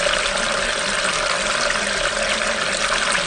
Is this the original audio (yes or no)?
yes